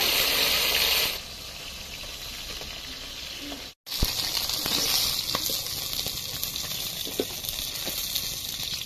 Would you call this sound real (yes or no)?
yes